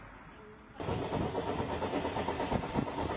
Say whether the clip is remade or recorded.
recorded